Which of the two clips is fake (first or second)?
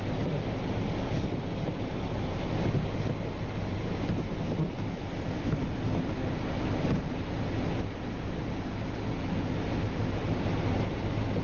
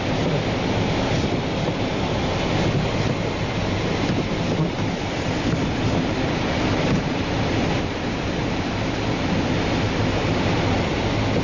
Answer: second